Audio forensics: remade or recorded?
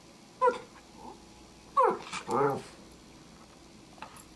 recorded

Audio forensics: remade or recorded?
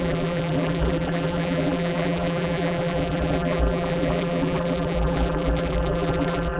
remade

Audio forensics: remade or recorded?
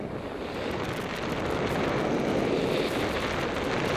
recorded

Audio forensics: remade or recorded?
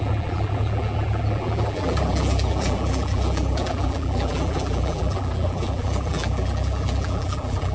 remade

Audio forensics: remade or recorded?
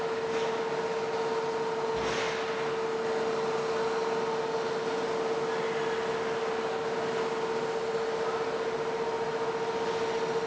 recorded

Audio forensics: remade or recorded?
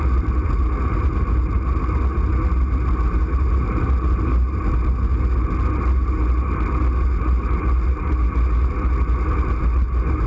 recorded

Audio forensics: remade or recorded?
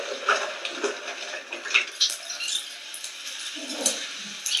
recorded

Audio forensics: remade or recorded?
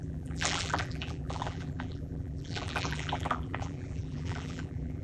remade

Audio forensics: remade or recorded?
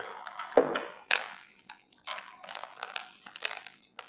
remade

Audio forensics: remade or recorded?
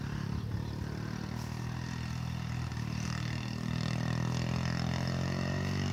remade